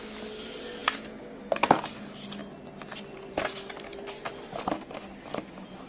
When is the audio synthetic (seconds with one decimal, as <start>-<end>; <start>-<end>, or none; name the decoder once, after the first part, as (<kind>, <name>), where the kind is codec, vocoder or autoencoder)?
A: none